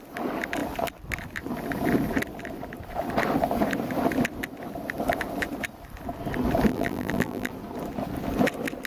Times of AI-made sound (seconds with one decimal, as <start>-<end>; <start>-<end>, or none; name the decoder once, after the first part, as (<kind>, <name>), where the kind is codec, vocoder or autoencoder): 6.7-7.5 (vocoder, BigVGAN v2)